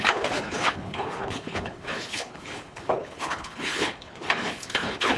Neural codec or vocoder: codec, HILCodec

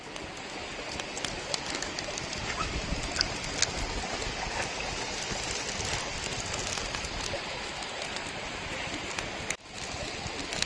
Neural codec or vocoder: none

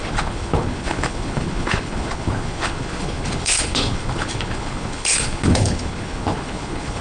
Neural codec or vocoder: codec, HILCodec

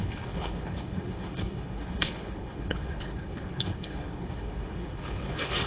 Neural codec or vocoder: codec, HILCodec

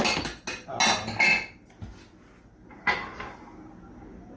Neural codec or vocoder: none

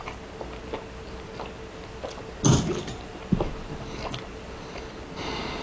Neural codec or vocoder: none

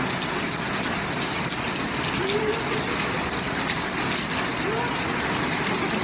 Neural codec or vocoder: none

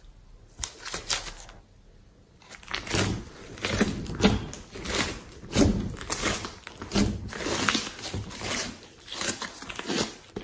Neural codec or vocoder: none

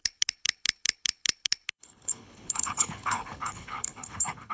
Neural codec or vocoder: codec, HILCodec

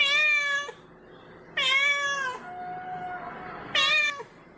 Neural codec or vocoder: none